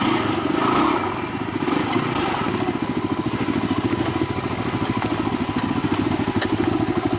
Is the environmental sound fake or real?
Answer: real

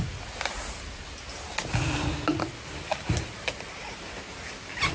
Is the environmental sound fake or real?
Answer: real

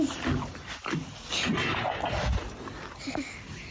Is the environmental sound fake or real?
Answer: real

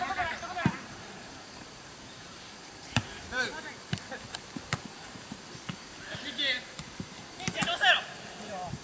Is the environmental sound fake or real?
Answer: fake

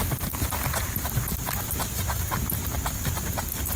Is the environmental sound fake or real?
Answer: real